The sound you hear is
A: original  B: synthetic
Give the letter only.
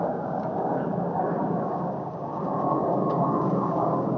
B